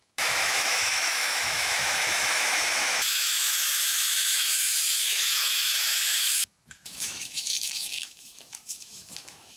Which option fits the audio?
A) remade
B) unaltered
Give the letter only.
A